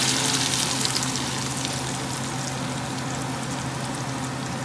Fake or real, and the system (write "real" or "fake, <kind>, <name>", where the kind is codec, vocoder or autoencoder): real